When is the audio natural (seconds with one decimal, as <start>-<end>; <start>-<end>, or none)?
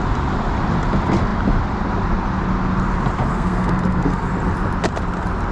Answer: 0.0-3.3; 4.3-5.5